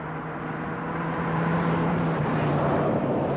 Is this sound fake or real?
fake